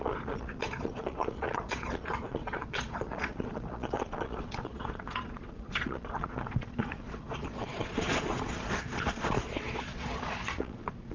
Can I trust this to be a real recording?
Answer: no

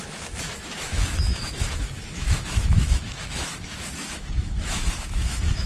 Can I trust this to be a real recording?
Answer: no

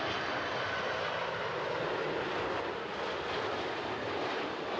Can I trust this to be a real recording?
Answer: yes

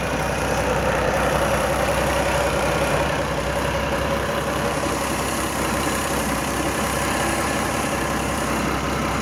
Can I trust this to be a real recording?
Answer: no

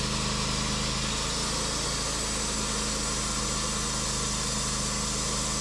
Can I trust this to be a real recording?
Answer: yes